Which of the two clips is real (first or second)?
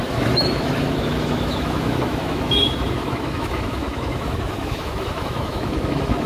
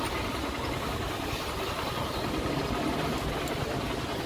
second